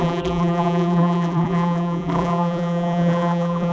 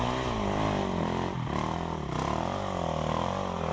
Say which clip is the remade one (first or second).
first